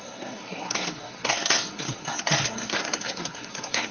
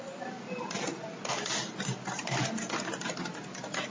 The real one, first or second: second